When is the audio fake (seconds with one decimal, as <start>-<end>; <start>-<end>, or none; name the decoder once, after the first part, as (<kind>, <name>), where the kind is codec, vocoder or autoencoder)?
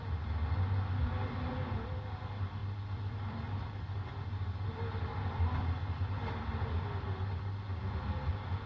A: 2.6-7.8 (vocoder, BigVGAN v2)